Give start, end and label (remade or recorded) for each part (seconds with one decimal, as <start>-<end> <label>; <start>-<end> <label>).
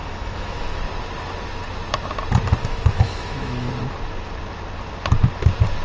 0.0-0.8 remade; 0.8-2.6 recorded; 2.6-3.7 remade; 3.7-5.8 recorded